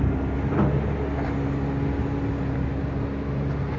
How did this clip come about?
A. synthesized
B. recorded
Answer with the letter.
B